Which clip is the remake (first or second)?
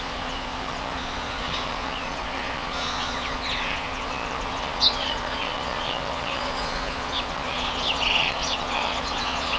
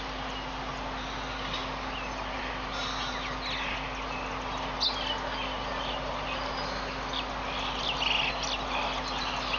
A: first